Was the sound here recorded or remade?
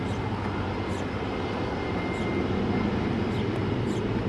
recorded